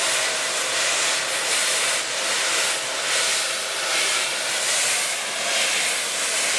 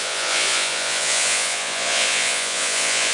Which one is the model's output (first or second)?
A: second